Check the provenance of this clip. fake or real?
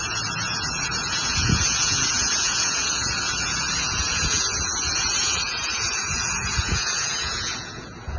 fake